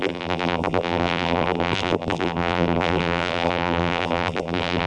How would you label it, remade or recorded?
remade